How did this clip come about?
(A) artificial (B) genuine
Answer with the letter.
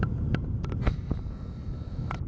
B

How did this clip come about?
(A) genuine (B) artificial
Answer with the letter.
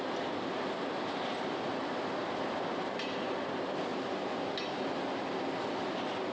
A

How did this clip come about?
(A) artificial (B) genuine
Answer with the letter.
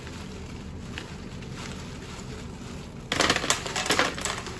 B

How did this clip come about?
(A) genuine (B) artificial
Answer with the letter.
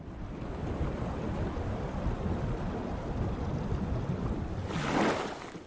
A